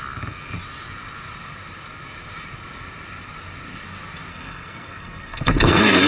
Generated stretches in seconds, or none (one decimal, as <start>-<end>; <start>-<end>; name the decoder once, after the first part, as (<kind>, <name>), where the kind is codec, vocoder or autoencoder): 4.3-6.1 (codec, SNAC)